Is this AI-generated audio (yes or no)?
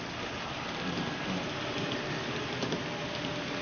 no